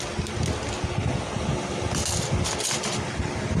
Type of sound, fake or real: real